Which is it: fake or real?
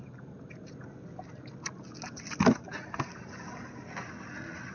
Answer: real